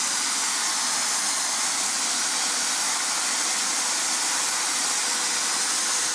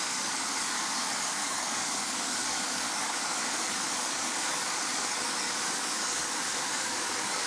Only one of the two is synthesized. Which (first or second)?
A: second